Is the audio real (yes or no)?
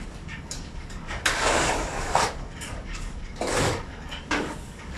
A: no